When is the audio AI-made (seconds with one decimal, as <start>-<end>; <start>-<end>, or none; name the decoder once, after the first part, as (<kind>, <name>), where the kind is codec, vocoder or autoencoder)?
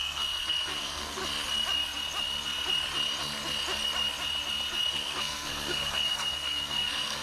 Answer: 0.0-1.2 (codec, SNAC); 4.9-7.2